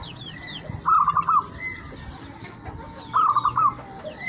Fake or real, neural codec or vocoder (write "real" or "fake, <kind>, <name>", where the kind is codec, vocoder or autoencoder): real